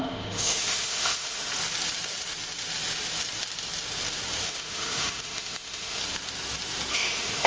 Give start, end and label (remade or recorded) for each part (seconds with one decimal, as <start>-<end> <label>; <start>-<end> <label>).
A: 0.0-1.5 remade; 1.5-4.4 recorded; 4.4-6.0 remade; 6.0-6.9 recorded; 6.9-7.5 remade